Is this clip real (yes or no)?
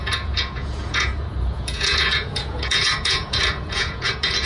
no